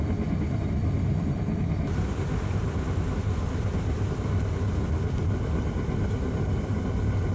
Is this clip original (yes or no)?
yes